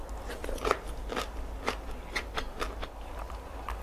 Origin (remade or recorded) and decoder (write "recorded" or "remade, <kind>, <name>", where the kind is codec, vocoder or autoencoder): recorded